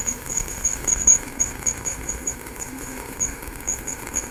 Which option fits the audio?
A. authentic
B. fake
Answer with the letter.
B